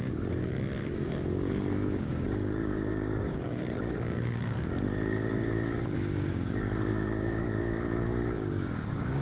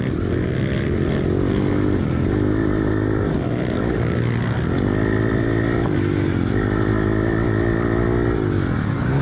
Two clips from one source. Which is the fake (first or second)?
first